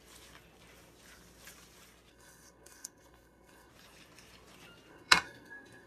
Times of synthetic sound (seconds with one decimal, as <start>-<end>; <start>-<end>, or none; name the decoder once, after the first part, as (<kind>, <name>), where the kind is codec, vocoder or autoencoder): 2.1-3.7 (codec, SNAC); 4.9-5.9